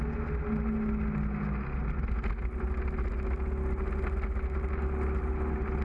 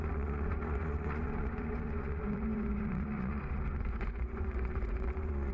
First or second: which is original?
first